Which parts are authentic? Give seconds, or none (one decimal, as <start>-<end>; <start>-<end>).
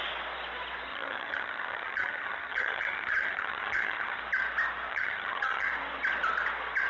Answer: 0.0-0.9; 4.2-4.9; 5.7-6.9